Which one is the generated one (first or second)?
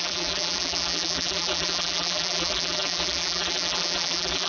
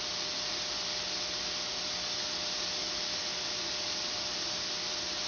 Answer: first